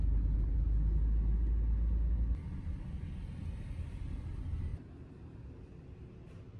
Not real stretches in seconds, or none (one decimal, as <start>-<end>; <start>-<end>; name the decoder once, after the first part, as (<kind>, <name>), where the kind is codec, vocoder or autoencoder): 4.7-5.6 (vocoder, BigVGAN v2)